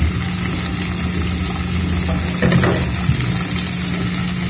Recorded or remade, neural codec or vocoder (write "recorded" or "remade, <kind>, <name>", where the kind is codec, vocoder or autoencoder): recorded